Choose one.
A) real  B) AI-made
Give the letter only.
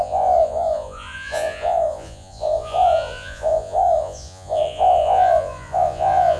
B